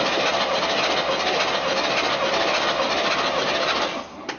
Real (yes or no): yes